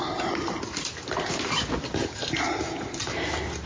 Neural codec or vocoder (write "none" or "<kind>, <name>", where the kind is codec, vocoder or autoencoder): none